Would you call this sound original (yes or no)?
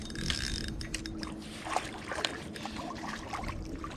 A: yes